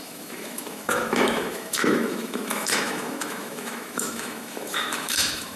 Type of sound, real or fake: fake